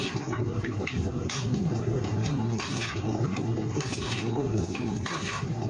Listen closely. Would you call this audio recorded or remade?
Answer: remade